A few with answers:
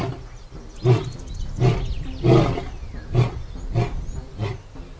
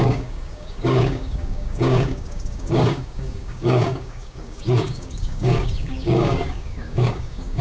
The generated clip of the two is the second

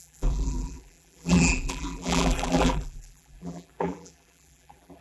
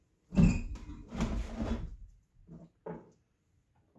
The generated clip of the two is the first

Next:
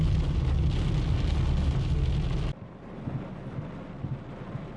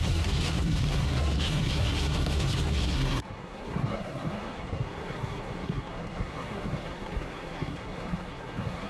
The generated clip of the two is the second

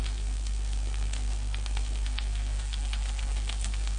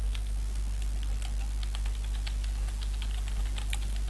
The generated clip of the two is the first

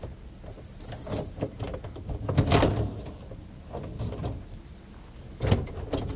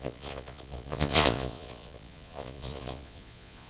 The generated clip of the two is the second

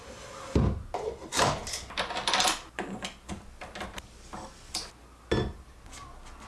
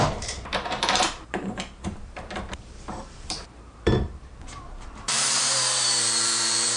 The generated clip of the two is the second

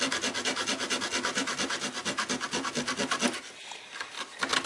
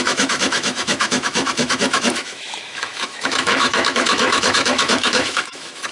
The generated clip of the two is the second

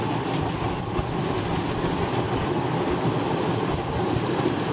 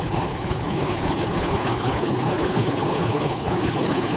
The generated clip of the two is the second